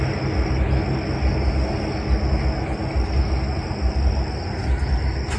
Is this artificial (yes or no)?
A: no